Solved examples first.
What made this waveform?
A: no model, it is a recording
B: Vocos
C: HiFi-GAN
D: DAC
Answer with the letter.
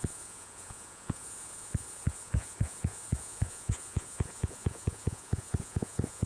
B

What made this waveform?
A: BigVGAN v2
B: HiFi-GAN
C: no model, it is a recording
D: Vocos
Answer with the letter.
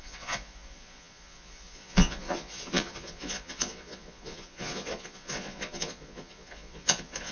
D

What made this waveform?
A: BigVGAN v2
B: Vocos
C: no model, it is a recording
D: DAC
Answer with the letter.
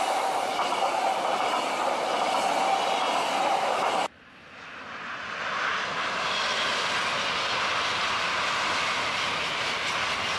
C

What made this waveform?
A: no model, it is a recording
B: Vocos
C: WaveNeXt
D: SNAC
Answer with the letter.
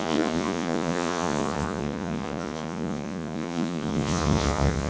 B